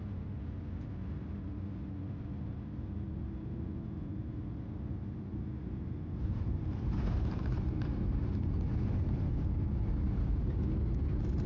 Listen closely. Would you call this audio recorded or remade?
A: recorded